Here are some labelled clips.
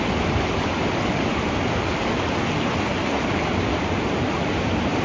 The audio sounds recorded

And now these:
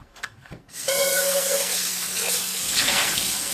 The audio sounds remade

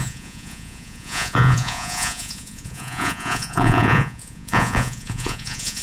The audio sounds remade